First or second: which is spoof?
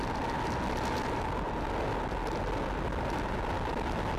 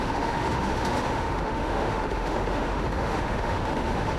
second